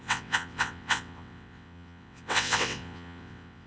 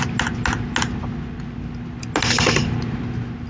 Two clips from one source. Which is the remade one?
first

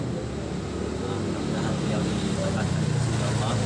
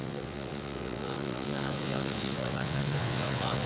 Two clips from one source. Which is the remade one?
second